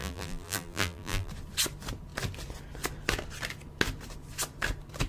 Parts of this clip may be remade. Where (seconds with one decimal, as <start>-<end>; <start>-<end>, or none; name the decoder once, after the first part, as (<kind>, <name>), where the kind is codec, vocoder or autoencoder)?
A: 0.0-1.3 (vocoder, BigVGAN v2)